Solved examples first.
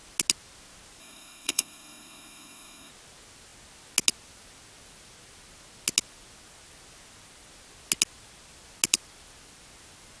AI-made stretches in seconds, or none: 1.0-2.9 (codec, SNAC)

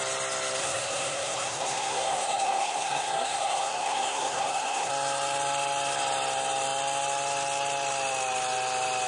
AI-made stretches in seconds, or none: 0.6-4.9 (codec, SNAC)

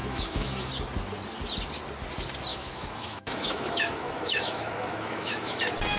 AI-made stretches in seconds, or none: 0.0-0.7 (autoencoder, DAC-VAE); 2.5-5.6

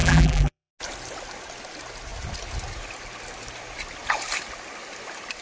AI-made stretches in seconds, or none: 0.0-0.7 (vocoder, BigVGAN v2)

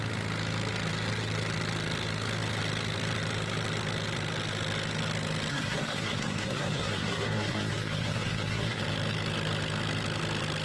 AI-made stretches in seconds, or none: 5.5-8.8 (codec, SNAC)

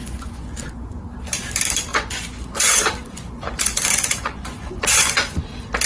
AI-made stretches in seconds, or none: 0.0-0.9 (vocoder, Vocos); 1.9-5.4